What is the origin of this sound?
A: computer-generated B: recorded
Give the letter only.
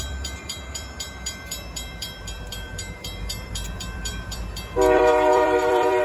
A